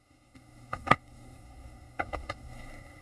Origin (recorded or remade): remade